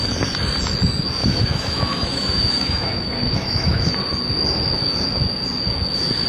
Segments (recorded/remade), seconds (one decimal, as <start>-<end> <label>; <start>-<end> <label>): 0.0-1.2 recorded; 1.2-3.9 remade; 3.9-6.3 recorded